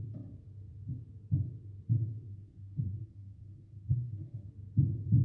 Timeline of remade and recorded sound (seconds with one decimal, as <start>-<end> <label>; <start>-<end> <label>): 0.0-2.3 recorded; 2.3-4.5 remade; 4.5-5.2 recorded